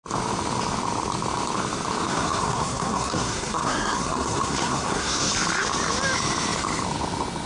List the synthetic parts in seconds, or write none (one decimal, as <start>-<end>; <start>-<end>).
2.1-5.3